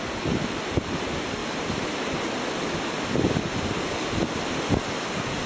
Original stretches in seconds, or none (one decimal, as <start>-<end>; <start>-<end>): 0.0-5.5